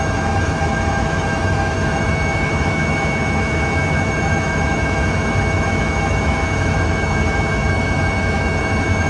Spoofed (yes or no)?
yes